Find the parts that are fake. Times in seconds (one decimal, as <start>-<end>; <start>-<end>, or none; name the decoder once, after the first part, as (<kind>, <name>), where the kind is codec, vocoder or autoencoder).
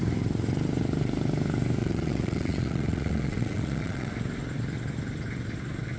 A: 1.8-4.1 (vocoder, Vocos)